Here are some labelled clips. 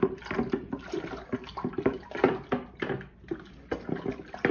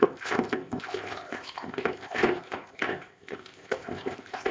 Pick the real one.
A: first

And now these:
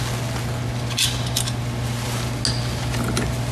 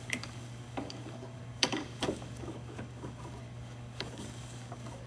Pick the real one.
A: first